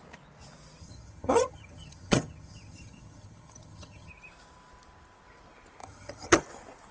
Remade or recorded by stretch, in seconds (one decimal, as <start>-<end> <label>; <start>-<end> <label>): 0.0-0.8 recorded; 0.8-4.1 remade; 4.1-5.8 recorded; 5.8-6.4 remade; 6.4-6.9 recorded